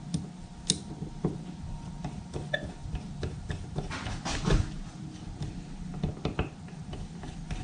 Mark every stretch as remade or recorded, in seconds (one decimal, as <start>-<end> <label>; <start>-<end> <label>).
0.0-7.6 recorded